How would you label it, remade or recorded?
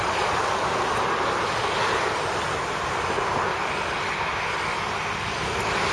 recorded